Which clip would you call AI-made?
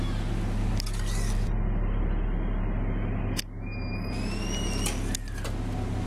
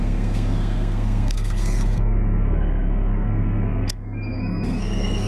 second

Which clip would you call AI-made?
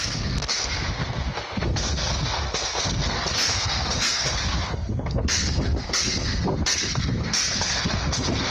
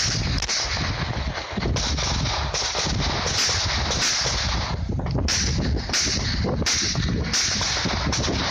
first